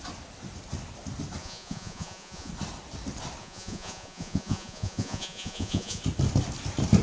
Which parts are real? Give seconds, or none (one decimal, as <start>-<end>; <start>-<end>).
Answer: 0.0-1.4; 2.5-3.4; 6.0-7.0